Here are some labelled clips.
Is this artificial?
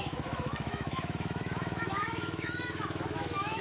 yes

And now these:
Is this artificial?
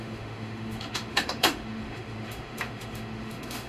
yes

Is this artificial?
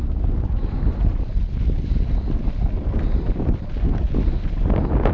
no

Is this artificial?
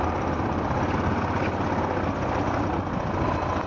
no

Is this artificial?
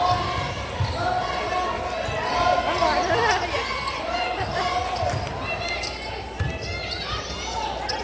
no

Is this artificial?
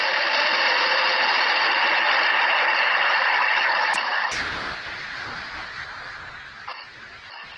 no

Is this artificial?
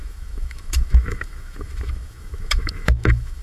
yes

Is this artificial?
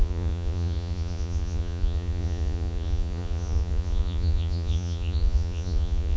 yes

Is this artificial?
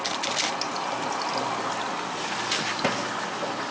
no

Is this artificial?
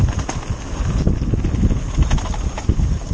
no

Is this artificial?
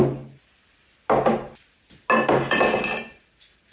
no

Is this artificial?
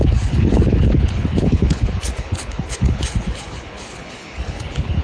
yes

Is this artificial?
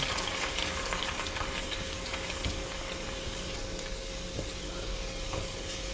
yes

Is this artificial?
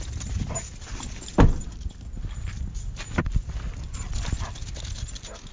no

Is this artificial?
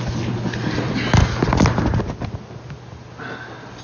no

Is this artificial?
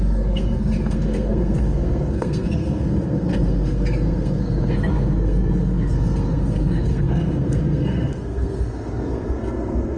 yes